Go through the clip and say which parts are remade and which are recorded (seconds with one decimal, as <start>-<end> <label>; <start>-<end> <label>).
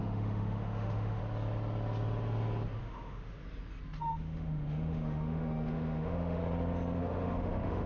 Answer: 0.0-1.2 remade; 1.2-2.8 recorded; 2.8-3.4 remade; 3.4-4.0 recorded; 4.0-6.4 remade; 6.4-7.0 recorded; 7.0-7.9 remade